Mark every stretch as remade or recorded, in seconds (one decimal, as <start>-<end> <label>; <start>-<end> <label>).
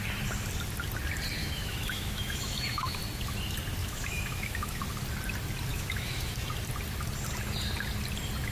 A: 0.0-1.4 recorded; 1.4-3.0 remade; 3.0-3.8 recorded; 3.8-4.8 remade; 4.8-5.7 recorded; 5.7-6.3 remade; 6.3-8.5 recorded